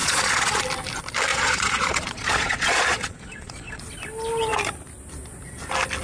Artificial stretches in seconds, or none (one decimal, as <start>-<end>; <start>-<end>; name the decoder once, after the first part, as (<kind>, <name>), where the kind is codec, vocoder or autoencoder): 0.0-0.6 (vocoder, Vocos); 1.3-3.8